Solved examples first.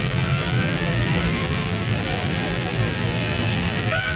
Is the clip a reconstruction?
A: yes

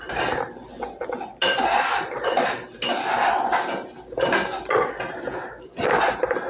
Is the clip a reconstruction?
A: no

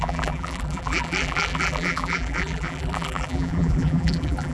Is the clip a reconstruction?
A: yes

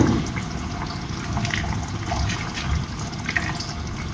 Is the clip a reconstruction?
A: no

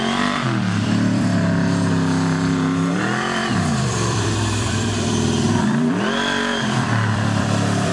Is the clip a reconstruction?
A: yes